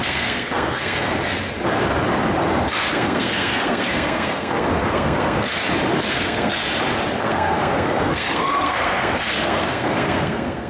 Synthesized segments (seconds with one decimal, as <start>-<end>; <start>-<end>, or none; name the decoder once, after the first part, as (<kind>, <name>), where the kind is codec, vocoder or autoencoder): 0.0-1.1 (codec, SNAC); 2.9-5.5; 6.1-6.6; 7.2-10.7